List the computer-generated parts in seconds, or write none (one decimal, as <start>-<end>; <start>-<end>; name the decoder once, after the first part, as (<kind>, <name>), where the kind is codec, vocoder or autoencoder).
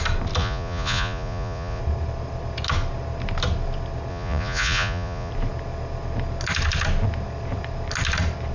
0.4-1.8 (vocoder, Vocos); 4.1-5.3